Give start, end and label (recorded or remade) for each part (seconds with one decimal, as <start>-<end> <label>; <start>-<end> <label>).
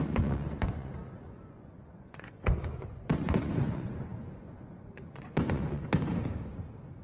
0.0-6.2 remade; 6.2-7.0 recorded